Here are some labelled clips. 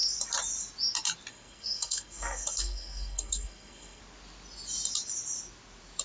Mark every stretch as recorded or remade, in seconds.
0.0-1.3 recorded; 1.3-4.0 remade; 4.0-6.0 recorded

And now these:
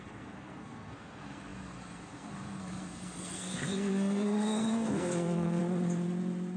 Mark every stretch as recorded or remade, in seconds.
0.0-5.6 remade; 5.6-6.6 recorded

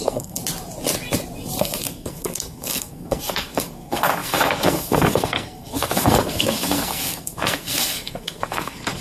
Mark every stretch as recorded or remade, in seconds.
0.0-0.4 remade; 0.4-1.6 recorded; 1.6-9.0 remade